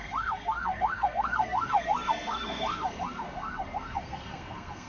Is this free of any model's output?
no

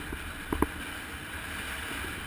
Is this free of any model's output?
yes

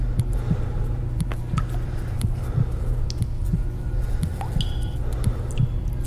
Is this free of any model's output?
yes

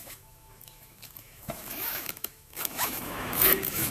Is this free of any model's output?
no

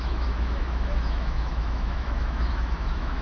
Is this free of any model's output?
no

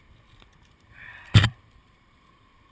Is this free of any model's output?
no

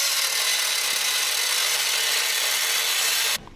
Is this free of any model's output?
yes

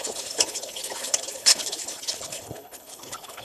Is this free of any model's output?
no